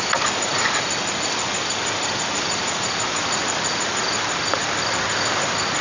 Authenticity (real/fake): real